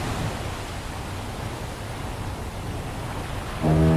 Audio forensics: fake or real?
real